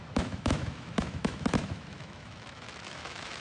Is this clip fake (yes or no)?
yes